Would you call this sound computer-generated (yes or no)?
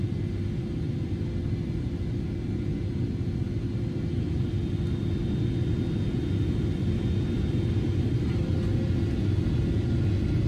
no